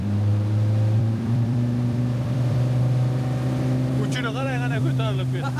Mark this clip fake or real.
fake